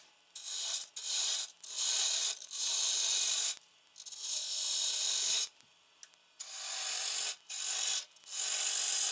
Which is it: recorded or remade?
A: recorded